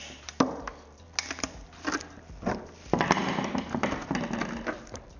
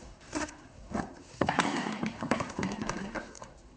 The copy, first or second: second